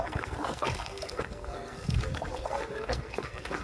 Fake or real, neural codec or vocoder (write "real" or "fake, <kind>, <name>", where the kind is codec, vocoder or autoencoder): fake, codec, SNAC